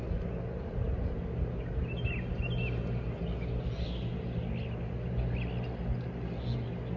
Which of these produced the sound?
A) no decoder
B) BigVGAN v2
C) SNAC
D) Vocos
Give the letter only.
A